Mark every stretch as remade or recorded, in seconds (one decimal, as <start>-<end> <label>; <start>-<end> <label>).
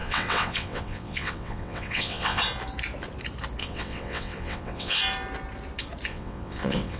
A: 0.0-2.4 remade; 2.4-3.6 recorded; 3.6-5.0 remade; 5.0-6.1 recorded; 6.1-7.0 remade